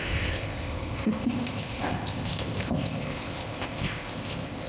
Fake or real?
fake